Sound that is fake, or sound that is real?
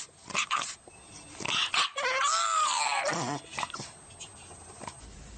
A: real